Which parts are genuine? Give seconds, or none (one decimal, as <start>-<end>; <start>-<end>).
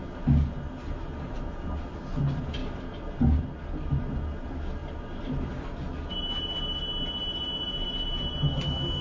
0.0-9.0